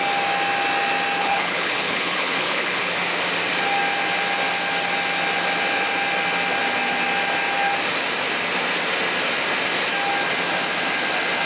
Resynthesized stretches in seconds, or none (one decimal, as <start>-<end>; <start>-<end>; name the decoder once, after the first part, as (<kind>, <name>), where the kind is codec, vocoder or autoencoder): 1.2-2.9 (codec, HILCodec)